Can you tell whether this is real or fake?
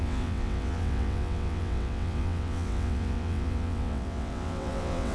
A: fake